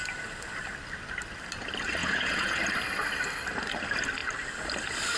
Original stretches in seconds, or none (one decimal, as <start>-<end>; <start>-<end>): 0.0-2.0; 2.6-5.2

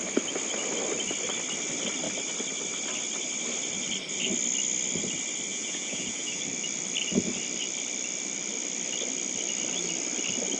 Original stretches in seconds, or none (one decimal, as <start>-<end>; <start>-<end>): 0.0-5.5; 6.4-10.6

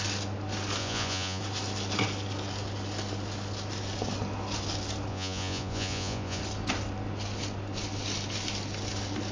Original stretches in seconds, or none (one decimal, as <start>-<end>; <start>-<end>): 0.0-0.8; 1.4-5.1; 6.4-9.3

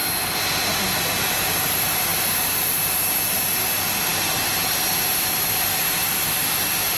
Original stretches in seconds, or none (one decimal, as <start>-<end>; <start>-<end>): 0.0-7.0

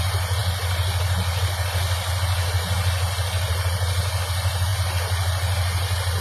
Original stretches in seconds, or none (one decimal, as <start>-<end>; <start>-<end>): 0.0-6.2